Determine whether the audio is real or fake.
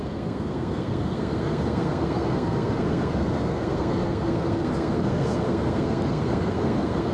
fake